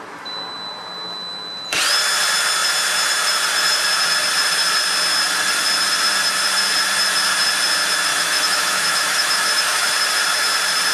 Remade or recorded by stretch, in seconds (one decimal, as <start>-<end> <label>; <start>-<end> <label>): 0.0-8.1 recorded; 8.1-9.9 remade; 9.9-10.9 recorded